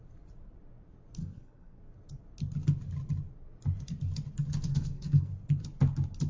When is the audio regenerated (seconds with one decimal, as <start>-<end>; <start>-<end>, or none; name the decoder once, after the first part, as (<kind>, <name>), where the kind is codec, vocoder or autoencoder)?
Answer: 1.2-1.8 (codec, SNAC); 4.7-5.3